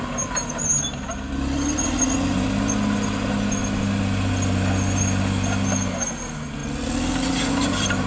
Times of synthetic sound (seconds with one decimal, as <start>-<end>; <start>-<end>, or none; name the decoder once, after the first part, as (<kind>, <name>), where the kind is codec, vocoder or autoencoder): none